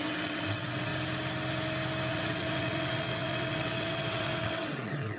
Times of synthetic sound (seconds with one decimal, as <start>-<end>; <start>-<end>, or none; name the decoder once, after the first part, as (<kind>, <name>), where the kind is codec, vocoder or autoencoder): 0.0-0.9 (vocoder, WaveNeXt); 2.1-5.2